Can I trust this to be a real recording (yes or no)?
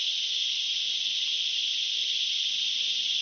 yes